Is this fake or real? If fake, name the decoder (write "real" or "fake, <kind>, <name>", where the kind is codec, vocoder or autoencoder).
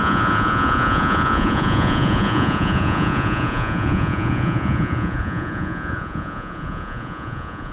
fake, vocoder, Vocos